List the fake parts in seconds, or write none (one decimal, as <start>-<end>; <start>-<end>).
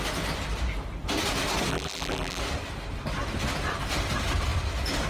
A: 1.7-2.4